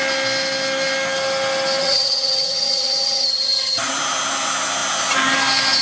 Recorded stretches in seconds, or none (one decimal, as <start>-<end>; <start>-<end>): 0.0-1.8; 3.9-5.8